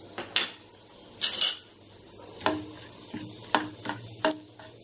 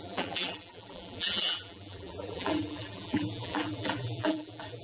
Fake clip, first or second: second